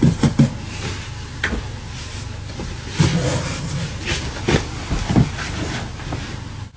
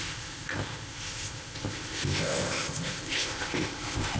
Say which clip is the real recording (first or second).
first